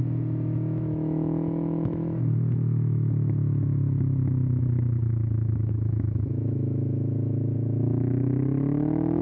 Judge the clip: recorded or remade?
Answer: remade